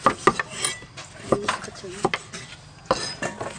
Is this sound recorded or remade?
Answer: recorded